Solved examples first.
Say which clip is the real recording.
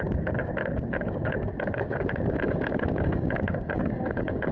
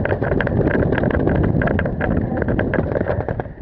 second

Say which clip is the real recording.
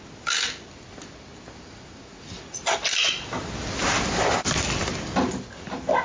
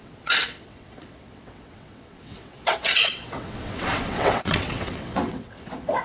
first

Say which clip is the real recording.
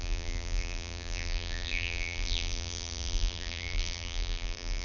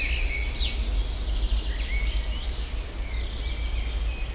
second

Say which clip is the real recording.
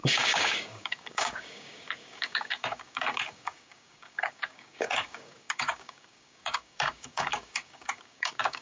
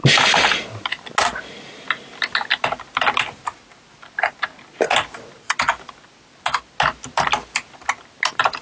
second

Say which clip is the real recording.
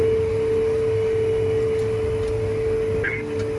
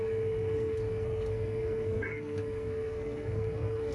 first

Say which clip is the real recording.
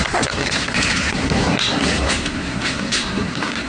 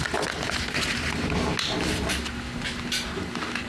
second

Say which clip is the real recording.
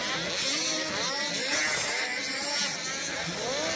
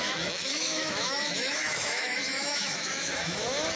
first